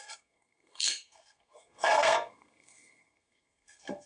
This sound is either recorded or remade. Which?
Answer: remade